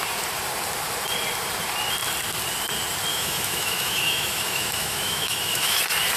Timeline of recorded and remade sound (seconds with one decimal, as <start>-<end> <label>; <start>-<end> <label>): 0.0-3.1 recorded; 3.1-5.8 remade; 5.8-6.2 recorded